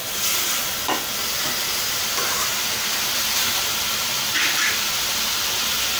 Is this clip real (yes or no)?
yes